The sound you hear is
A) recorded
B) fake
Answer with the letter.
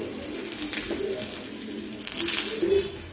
A